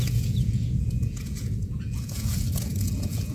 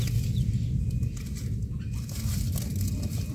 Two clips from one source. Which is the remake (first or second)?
first